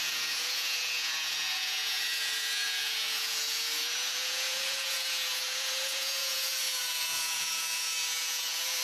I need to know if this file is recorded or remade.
remade